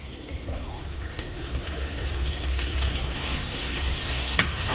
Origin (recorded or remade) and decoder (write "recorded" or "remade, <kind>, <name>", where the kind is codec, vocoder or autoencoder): remade, codec, SNAC